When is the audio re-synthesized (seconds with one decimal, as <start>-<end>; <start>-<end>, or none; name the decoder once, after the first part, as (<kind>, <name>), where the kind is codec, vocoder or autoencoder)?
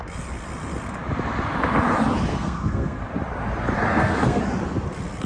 2.3-3.0 (codec, SNAC); 3.9-4.4